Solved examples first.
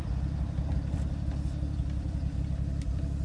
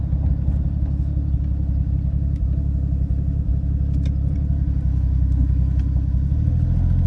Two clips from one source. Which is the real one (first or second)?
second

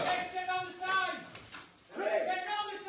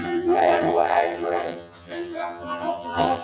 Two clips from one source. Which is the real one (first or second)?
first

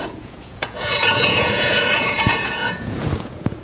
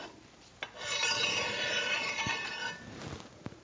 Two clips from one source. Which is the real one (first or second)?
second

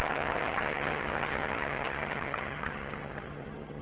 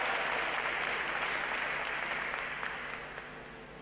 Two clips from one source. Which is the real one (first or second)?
second